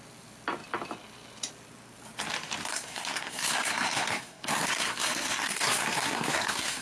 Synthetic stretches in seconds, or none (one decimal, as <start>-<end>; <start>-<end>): 2.7-6.8